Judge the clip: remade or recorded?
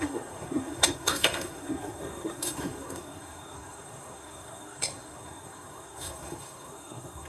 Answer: remade